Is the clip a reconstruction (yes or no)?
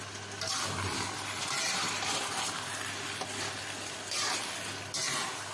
no